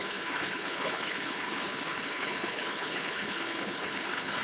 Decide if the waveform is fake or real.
fake